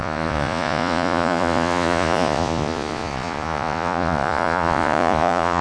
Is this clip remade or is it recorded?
remade